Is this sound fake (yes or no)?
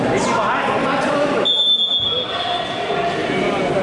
no